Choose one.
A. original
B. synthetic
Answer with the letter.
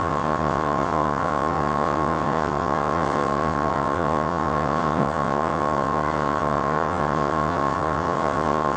B